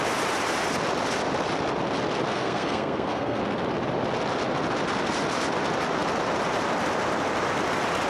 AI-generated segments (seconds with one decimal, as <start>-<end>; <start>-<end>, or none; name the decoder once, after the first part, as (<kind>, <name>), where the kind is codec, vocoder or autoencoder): 2.3-3.4 (codec, SNAC)